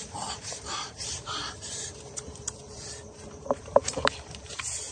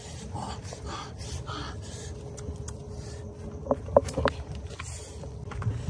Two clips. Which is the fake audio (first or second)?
first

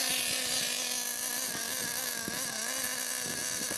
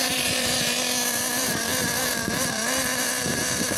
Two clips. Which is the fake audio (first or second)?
second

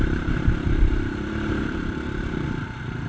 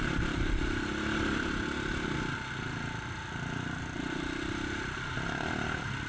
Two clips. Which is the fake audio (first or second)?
first